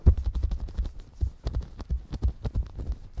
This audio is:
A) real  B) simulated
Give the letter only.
A